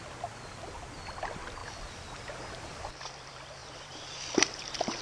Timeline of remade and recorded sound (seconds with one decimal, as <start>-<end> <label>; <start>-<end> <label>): 0.0-3.6 recorded; 3.6-5.0 remade